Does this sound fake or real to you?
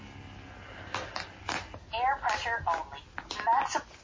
real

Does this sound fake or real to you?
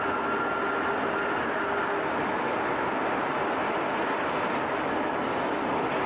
real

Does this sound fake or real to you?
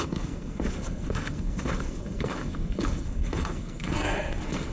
fake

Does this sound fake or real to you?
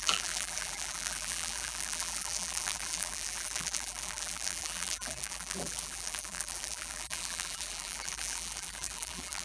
fake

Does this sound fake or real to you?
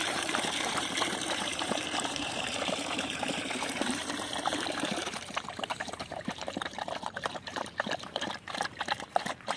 fake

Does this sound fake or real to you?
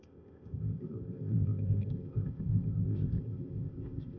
fake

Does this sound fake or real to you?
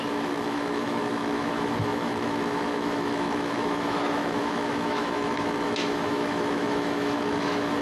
fake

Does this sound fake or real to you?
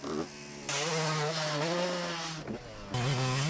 real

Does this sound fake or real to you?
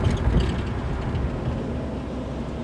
real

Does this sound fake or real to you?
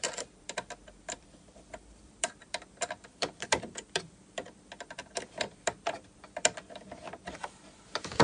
fake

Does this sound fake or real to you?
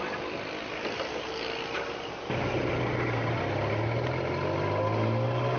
real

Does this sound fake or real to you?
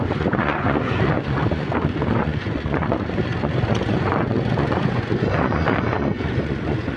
fake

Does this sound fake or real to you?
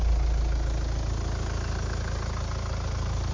real